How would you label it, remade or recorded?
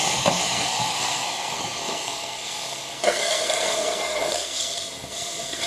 remade